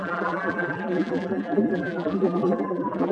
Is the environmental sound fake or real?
fake